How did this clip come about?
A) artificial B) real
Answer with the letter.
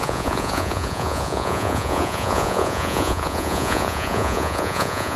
A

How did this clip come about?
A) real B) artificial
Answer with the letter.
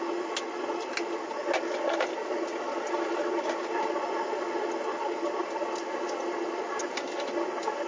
A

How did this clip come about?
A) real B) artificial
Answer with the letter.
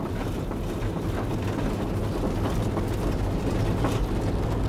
A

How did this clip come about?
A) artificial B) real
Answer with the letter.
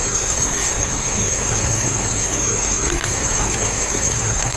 A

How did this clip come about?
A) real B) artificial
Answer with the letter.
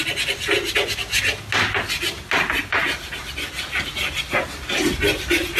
A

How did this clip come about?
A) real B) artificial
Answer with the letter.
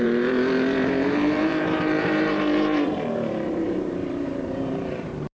B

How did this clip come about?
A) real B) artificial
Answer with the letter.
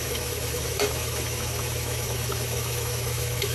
B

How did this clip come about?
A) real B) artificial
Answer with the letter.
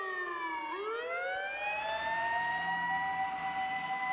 A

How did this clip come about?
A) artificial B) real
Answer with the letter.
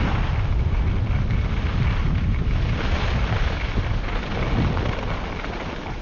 B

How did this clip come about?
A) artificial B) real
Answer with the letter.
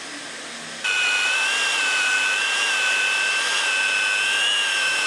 B